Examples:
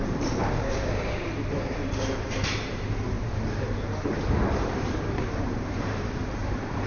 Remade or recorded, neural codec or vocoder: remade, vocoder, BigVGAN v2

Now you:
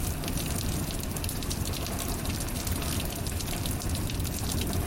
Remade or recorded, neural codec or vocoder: remade, vocoder, BigVGAN v2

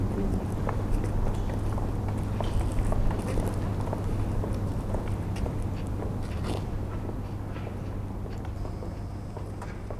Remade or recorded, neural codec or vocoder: recorded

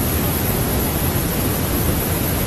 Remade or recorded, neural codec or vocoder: recorded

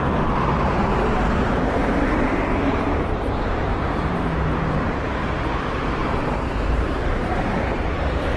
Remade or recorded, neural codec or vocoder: remade, vocoder, BigVGAN v2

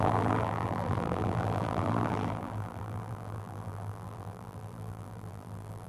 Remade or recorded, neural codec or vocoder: remade, vocoder, BigVGAN v2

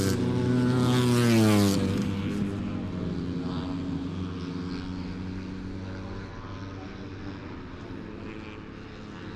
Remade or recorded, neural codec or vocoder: recorded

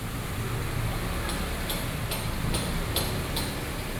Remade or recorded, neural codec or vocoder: recorded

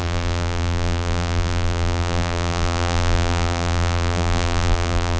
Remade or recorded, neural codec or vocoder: remade, vocoder, BigVGAN v2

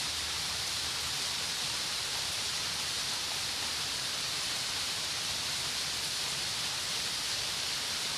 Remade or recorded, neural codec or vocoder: remade, vocoder, BigVGAN v2